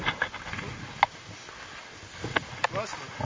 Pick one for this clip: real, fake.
real